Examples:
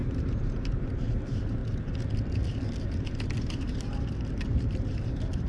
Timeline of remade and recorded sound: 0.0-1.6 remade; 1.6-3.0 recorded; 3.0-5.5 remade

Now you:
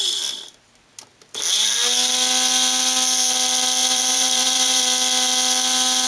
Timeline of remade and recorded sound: 0.0-3.8 recorded; 3.8-4.8 remade; 4.8-6.1 recorded